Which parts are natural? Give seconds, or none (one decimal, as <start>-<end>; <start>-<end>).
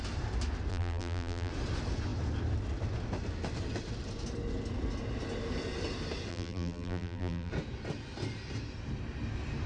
0.0-0.7; 1.5-6.3; 7.5-9.7